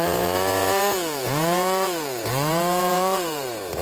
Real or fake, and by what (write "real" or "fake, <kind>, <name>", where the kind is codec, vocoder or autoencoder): fake, vocoder, Vocos